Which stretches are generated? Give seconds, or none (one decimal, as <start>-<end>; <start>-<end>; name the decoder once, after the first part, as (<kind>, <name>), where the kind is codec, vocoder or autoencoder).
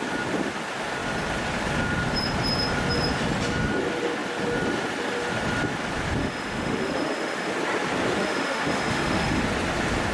6.2-7.5 (autoencoder, DAC-VAE); 8.2-9.4